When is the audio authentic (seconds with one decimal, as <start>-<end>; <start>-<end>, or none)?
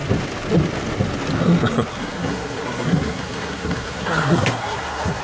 0.0-1.9